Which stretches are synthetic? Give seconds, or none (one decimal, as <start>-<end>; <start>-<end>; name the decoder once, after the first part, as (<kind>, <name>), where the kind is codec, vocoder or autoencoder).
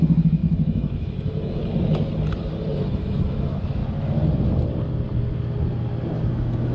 0.0-1.6 (autoencoder, DAC-VAE); 2.9-3.8; 6.3-6.7